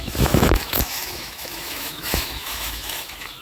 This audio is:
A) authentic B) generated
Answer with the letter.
B